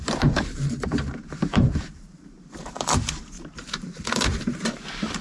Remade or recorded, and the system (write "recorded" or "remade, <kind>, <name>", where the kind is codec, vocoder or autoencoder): remade, vocoder, BigVGAN v2